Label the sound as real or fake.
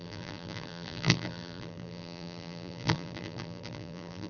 fake